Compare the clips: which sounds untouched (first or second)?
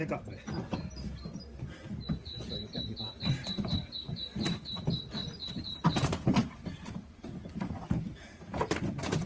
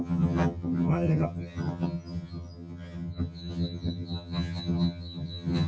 first